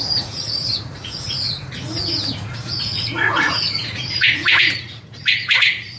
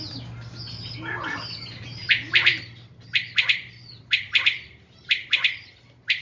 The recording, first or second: second